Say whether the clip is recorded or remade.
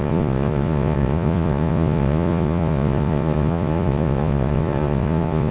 remade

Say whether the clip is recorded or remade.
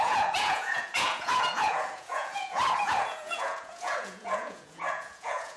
remade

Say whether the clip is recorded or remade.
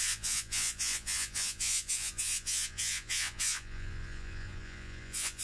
remade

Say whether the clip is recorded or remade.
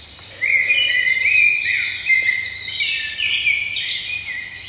recorded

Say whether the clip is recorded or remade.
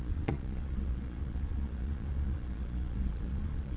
remade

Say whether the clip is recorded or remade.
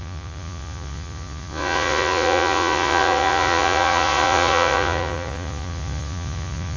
remade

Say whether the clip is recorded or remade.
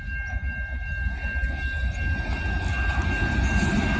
recorded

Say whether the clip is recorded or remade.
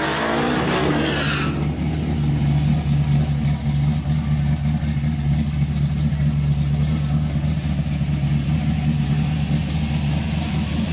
recorded